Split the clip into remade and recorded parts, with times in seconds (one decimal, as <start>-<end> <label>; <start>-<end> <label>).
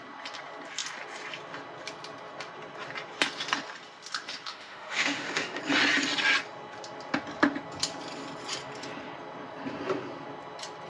0.0-4.5 recorded; 4.5-5.6 remade; 5.6-10.9 recorded